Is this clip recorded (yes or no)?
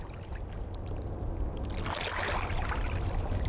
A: yes